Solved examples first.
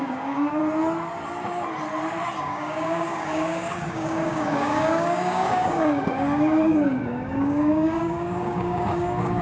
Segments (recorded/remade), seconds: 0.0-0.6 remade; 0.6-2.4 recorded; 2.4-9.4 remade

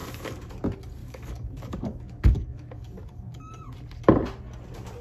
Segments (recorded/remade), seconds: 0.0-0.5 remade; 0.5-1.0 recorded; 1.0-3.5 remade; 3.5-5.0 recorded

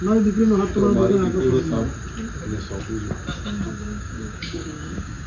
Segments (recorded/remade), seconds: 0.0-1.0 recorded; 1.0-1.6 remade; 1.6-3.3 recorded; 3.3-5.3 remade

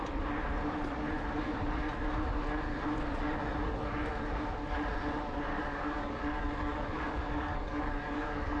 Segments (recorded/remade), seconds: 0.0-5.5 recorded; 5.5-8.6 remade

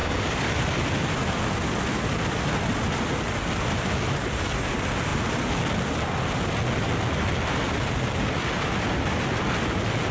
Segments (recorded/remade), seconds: 0.0-0.5 remade; 0.5-10.1 recorded

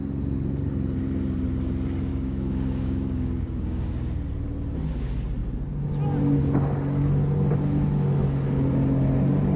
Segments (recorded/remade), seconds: 0.0-2.1 recorded; 2.1-3.9 remade; 3.9-9.6 recorded